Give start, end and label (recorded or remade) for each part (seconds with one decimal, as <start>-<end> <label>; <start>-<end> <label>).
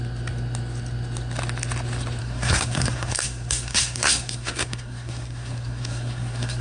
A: 0.0-2.2 recorded; 2.2-6.6 remade